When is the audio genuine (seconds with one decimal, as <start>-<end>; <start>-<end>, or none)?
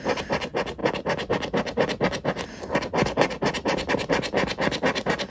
0.0-5.3